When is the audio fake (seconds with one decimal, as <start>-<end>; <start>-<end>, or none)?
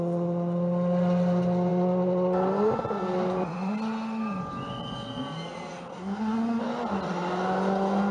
5.9-6.6